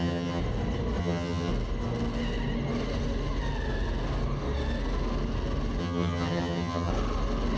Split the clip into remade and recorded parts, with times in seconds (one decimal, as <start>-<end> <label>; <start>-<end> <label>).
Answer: 0.0-0.4 remade; 0.4-1.0 recorded; 1.0-1.5 remade; 1.5-5.8 recorded; 5.8-6.9 remade; 6.9-7.6 recorded